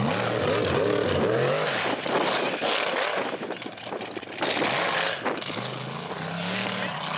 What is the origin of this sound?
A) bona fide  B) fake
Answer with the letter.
A